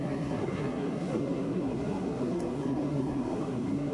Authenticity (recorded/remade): remade